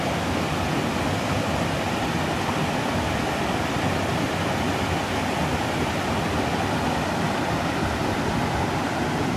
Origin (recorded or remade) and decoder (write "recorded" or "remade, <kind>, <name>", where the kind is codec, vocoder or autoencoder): recorded